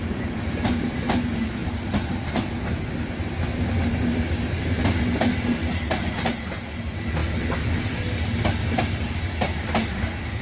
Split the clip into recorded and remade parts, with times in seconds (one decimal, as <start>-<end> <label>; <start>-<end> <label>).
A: 0.0-5.6 recorded; 5.6-6.3 remade; 6.3-10.4 recorded